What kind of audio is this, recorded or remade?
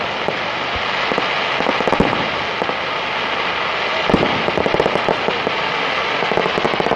recorded